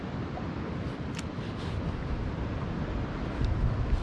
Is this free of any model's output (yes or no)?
yes